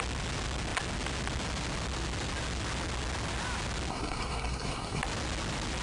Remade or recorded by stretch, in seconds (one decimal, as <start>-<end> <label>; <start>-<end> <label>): 0.0-3.9 recorded; 3.9-5.0 remade; 5.0-5.8 recorded